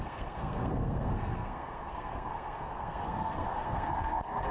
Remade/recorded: remade